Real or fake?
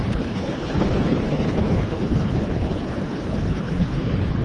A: fake